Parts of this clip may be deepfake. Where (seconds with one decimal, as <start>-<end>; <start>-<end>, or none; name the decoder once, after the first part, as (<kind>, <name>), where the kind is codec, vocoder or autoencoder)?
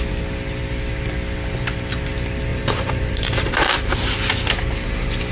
2.5-3.7 (vocoder, BigVGAN v2)